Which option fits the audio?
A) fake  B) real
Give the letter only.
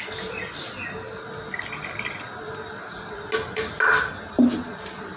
B